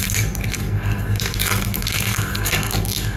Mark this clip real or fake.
fake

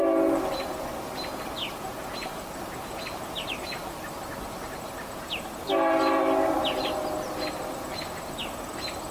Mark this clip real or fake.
real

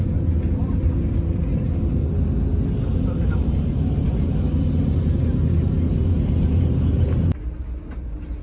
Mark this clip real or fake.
real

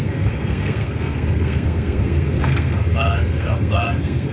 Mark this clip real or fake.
fake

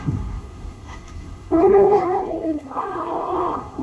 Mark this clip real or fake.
fake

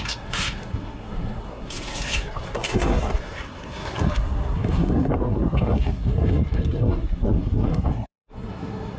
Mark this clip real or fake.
fake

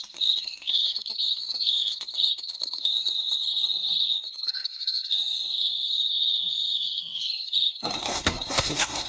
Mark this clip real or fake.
fake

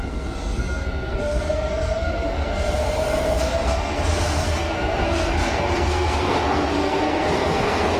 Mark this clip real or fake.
fake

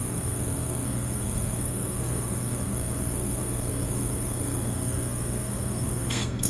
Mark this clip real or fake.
fake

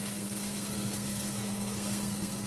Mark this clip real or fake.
fake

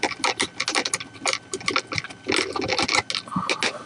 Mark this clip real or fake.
real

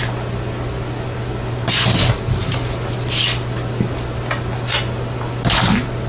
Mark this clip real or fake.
real